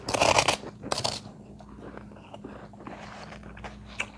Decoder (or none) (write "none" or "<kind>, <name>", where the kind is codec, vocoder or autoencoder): none